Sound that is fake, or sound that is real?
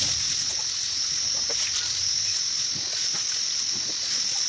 real